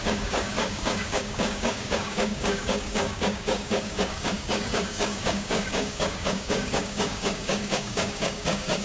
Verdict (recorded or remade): remade